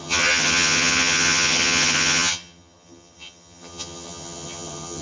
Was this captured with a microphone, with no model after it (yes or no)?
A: no